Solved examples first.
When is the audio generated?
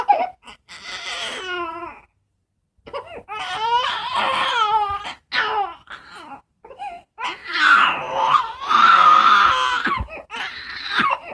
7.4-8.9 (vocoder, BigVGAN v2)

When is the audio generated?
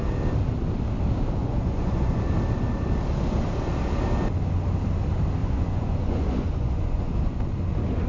1.4-2.2 (vocoder, Vocos); 5.4-7.4